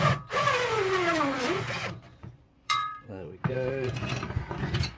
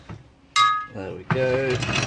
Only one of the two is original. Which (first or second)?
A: second